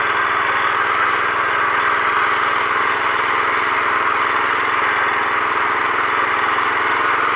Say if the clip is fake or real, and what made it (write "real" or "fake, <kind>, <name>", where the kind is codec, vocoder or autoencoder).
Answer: real